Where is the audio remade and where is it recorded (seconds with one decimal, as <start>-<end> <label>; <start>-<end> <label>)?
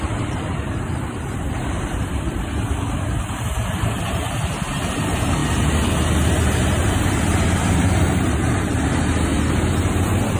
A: 0.0-9.3 remade; 9.3-10.4 recorded